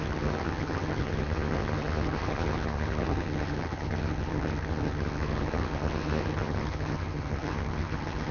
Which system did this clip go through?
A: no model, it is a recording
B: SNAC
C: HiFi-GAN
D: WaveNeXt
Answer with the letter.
C